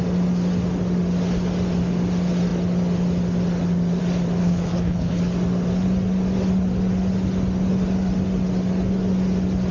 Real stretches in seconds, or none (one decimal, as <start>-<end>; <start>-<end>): 0.0-4.4; 5.2-9.7